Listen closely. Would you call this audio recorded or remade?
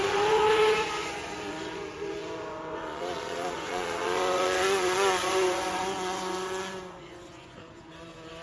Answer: remade